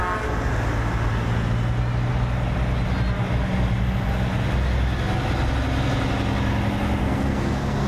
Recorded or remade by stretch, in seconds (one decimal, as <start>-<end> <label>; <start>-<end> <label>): 0.0-7.0 recorded; 7.0-7.9 remade